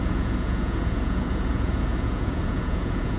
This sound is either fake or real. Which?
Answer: fake